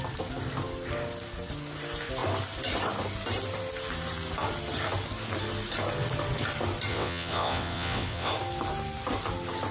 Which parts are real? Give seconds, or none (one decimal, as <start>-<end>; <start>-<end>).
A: 0.0-6.9; 8.3-9.7